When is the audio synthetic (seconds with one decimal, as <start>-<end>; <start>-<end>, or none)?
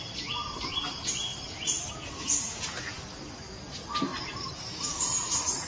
1.3-1.9